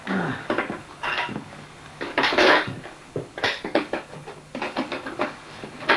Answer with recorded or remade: remade